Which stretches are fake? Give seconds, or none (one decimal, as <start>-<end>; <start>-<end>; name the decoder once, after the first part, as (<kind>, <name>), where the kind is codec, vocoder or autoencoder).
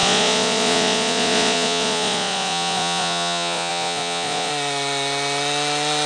0.0-4.5 (vocoder, Vocos)